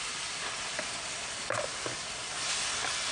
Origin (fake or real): real